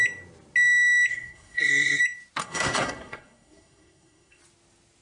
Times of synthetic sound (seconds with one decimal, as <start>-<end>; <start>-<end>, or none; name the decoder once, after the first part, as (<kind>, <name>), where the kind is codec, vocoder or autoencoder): 1.1-2.0 (codec, SNAC); 2.4-4.4